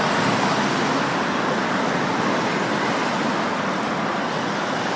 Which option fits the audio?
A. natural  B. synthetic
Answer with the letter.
A